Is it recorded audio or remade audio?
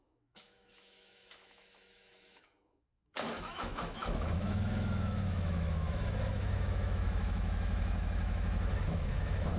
remade